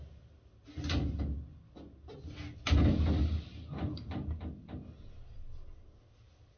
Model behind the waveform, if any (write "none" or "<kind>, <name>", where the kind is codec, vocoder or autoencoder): none